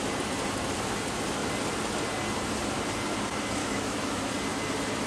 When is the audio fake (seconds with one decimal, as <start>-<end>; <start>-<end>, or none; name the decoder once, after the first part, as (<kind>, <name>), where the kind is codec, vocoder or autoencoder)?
3.6-4.3 (autoencoder, DAC-VAE)